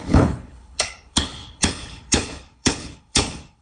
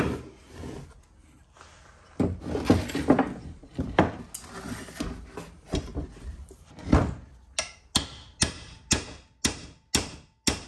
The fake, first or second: first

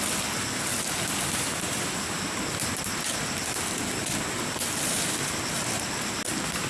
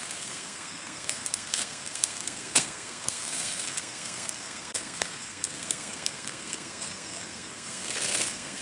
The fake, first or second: second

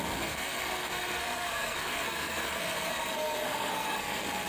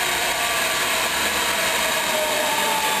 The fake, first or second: first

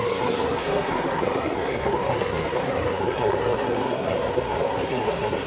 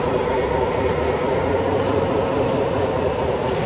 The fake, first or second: first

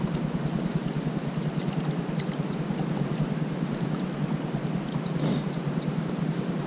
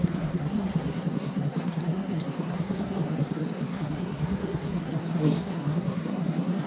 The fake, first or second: second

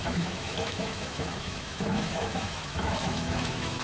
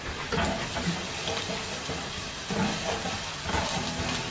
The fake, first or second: first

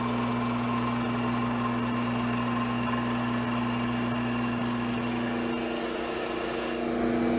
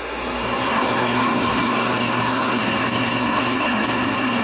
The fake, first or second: second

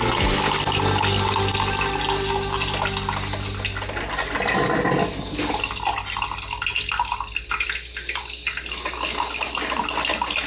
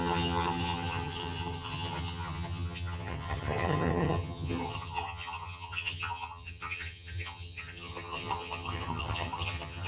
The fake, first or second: second